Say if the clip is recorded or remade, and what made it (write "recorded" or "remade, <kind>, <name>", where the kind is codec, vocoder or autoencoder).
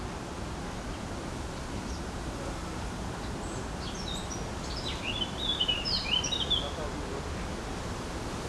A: recorded